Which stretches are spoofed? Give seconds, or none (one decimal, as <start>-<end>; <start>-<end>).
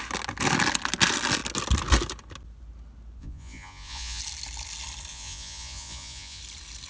3.2-4.2; 5.1-6.4